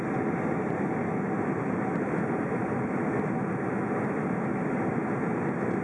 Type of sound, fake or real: real